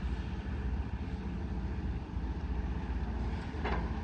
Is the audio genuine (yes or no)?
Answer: yes